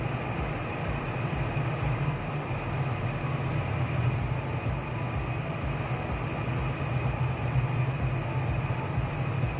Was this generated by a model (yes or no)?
no